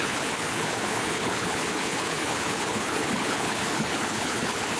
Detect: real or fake fake